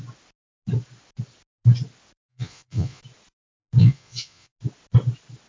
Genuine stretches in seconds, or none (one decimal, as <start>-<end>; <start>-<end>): 0.0-2.3; 3.0-3.8; 4.5-5.5